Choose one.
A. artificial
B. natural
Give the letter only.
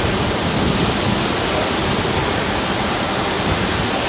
B